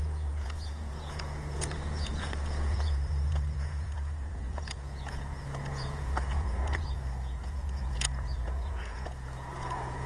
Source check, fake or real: fake